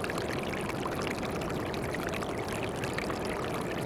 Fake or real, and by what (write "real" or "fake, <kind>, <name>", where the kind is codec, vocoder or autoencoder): real